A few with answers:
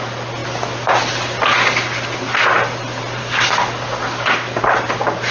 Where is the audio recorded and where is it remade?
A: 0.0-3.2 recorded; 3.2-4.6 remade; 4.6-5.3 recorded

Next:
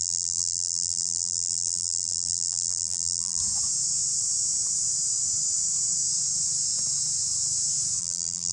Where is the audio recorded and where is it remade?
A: 0.0-3.4 remade; 3.4-8.0 recorded; 8.0-8.5 remade

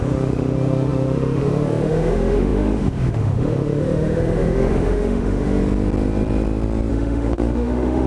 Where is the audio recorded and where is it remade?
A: 0.0-5.6 remade; 5.6-6.9 recorded; 6.9-8.1 remade

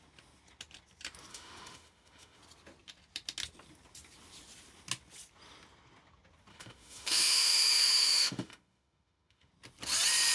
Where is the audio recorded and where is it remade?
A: 0.0-1.3 recorded; 1.3-2.4 remade; 2.4-6.5 recorded; 6.5-9.5 remade; 9.5-10.3 recorded

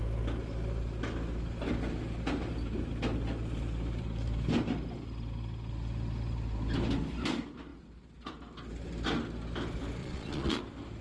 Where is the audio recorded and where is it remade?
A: 0.0-10.0 recorded; 10.0-10.6 remade; 10.6-11.0 recorded

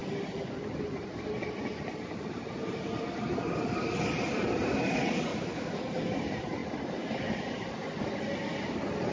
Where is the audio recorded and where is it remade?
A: 0.0-5.3 recorded; 5.3-5.8 remade; 5.8-9.1 recorded

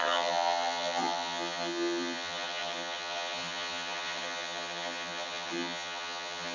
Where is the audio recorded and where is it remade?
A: 0.0-6.5 remade